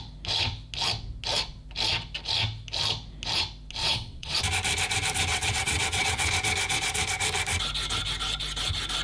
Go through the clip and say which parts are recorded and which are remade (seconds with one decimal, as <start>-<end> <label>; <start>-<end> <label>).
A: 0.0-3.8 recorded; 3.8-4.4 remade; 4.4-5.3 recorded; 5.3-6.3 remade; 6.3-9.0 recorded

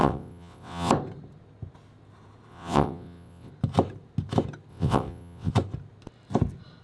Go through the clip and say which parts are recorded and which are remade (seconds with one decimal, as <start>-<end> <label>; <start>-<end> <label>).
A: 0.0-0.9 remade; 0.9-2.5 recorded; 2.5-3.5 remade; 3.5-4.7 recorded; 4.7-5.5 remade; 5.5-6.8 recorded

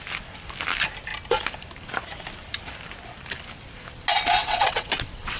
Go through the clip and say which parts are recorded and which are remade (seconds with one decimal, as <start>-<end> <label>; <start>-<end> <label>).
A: 0.0-4.4 recorded; 4.4-5.4 remade